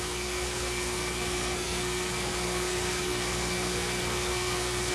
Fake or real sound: fake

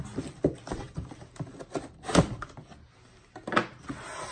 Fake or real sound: real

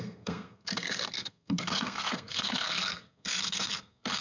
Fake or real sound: fake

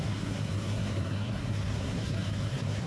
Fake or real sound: fake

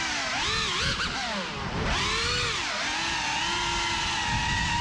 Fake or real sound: real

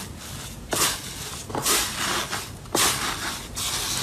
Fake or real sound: real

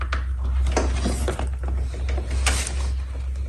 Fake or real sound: real